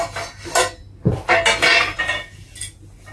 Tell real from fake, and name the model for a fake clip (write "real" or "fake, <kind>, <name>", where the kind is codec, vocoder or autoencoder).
real